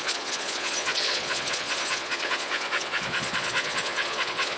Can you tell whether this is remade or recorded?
remade